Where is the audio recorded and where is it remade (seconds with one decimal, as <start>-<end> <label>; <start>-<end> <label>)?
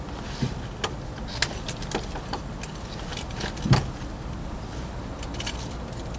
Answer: 0.0-6.2 recorded